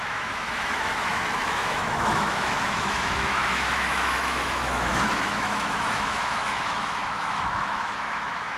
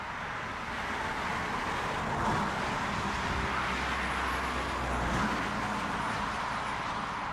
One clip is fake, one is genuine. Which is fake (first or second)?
first